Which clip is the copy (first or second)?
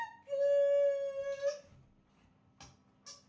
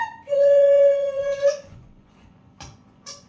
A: second